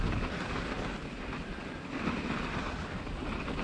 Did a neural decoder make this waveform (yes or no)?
no